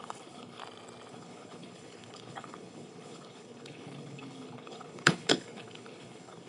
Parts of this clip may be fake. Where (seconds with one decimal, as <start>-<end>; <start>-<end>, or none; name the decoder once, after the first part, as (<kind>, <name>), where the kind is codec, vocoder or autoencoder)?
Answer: 0.0-0.6 (codec, HILCodec); 1.1-6.5